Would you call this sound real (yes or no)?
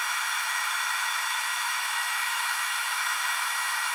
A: no